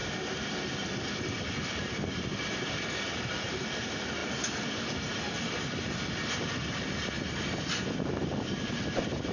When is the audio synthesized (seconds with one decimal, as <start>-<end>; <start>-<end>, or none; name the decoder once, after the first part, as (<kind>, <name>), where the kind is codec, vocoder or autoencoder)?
none